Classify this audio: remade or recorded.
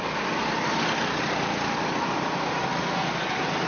recorded